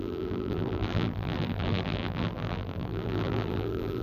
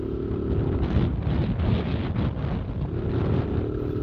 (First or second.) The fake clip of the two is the first